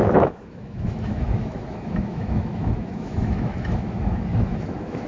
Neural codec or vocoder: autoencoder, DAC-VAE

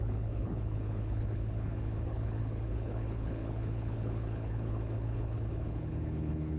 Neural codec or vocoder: codec, HILCodec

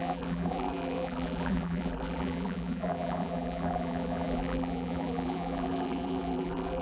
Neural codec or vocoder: vocoder, BigVGAN v2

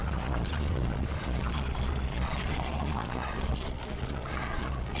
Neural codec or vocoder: vocoder, Vocos